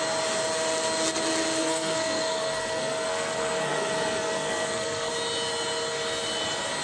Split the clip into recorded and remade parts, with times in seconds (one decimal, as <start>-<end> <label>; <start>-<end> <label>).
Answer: 0.0-1.6 recorded; 1.6-5.1 remade; 5.1-6.8 recorded